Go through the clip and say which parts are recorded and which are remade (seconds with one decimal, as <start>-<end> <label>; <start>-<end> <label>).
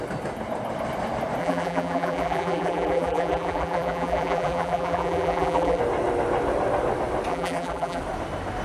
0.0-1.4 recorded; 1.4-5.8 remade; 5.8-7.3 recorded; 7.3-8.0 remade; 8.0-8.6 recorded